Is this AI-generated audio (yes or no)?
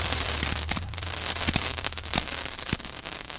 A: yes